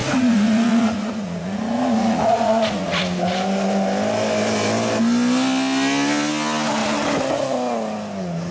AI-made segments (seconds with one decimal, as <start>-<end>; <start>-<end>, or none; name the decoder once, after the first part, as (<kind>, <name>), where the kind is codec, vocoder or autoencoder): 0.0-3.0 (vocoder, Vocos)